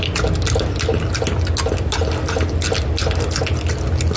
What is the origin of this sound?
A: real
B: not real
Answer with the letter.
A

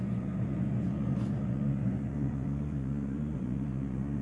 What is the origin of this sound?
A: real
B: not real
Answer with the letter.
B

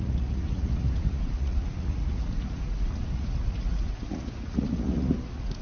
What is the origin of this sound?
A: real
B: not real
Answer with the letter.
B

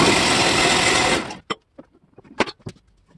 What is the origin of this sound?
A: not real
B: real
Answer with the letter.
B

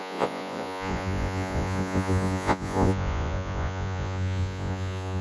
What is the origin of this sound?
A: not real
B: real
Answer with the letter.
A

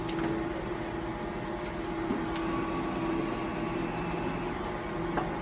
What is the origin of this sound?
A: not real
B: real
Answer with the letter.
B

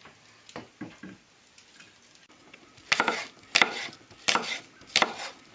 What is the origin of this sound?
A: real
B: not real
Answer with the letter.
A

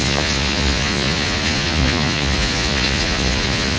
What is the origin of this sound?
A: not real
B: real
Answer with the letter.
A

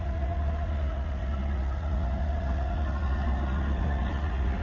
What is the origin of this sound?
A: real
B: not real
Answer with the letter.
B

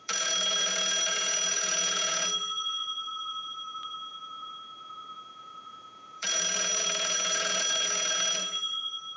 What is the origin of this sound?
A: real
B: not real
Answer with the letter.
B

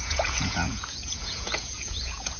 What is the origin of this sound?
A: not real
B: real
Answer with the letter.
A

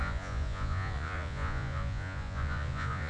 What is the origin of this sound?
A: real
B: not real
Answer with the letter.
B